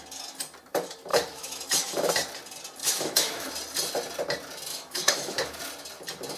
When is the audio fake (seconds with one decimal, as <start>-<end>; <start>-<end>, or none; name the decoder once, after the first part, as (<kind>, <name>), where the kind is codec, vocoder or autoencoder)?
1.1-2.1 (autoencoder, DAC-VAE); 2.8-3.5; 4.7-5.6